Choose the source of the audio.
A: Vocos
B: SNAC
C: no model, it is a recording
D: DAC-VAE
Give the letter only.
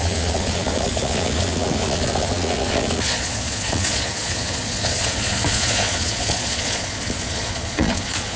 A